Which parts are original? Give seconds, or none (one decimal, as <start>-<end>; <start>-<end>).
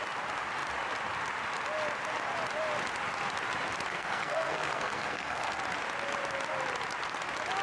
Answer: 0.0-3.9; 5.6-7.6